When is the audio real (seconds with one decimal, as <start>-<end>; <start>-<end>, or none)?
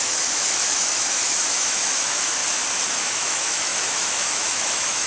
2.4-3.0